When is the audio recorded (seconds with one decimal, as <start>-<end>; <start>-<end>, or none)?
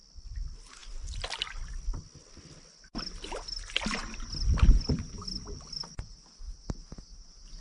0.0-7.6